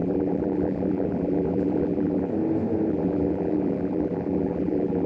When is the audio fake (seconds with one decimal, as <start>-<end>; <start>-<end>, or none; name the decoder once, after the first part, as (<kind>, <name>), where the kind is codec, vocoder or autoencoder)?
0.0-2.3 (vocoder, BigVGAN v2); 2.9-5.1